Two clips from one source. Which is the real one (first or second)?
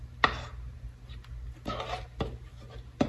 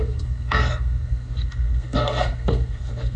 first